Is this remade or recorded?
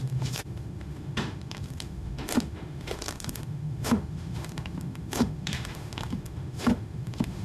remade